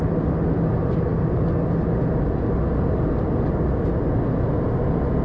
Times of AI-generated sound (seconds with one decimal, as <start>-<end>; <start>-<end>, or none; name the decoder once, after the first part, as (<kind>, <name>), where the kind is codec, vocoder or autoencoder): none